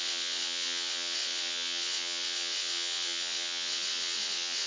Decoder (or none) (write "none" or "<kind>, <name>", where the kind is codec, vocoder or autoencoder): vocoder, WaveNeXt